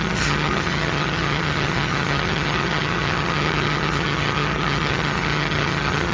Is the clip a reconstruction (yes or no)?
yes